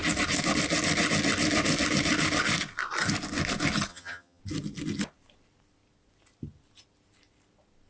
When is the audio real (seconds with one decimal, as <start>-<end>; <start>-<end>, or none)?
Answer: 0.0-3.9; 4.4-7.9